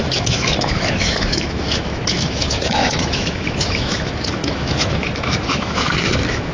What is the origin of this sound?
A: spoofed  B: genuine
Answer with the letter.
A